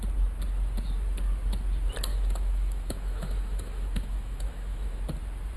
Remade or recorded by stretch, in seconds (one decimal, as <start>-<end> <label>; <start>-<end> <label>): 0.0-2.1 recorded; 2.1-5.0 remade; 5.0-5.6 recorded